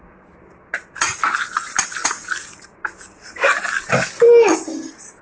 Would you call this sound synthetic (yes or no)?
no